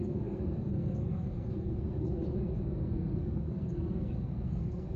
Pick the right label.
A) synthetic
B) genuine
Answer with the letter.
A